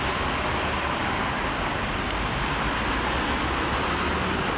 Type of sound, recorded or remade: recorded